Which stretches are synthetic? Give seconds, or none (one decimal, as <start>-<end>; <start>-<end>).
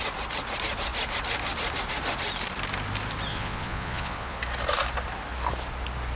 3.3-4.4